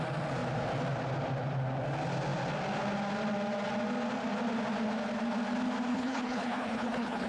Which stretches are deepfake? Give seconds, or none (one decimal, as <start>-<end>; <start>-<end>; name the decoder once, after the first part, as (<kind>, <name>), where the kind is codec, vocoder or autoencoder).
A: 5.9-7.3 (codec, HILCodec)